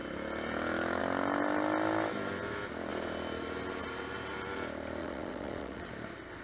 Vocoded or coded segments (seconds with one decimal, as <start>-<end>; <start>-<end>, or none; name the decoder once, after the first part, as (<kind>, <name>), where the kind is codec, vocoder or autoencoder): 5.0-5.9 (vocoder, WaveNeXt)